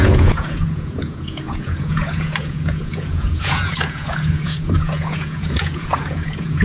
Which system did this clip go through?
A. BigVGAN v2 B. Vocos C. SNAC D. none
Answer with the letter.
B